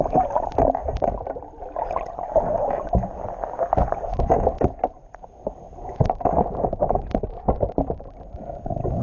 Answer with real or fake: real